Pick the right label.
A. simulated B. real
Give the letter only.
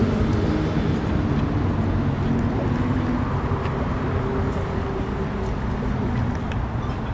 B